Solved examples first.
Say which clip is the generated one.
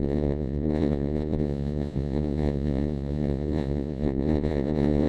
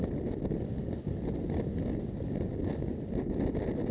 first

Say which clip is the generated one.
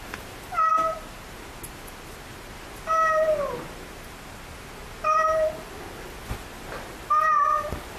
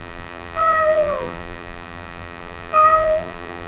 second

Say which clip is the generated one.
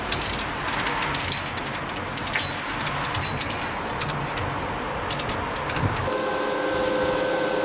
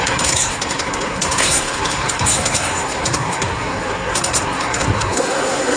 second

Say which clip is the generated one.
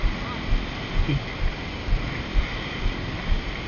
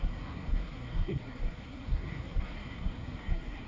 second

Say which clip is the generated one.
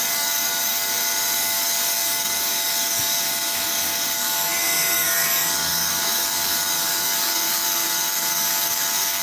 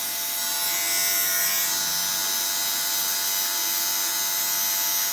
first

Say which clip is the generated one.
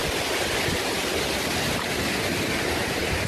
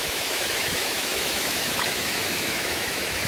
second